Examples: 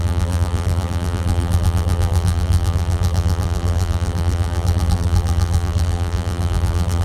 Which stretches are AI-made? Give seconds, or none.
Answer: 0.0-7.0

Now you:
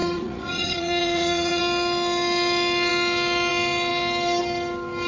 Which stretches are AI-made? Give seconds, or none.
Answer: 0.0-1.6